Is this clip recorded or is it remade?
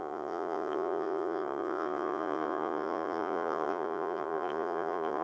remade